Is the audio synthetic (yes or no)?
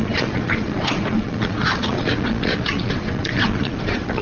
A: yes